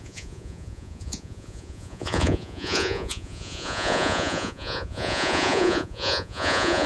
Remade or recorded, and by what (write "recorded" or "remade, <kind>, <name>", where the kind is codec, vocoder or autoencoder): remade, vocoder, Vocos